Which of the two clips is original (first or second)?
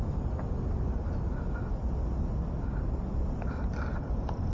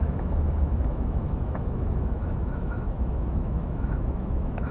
first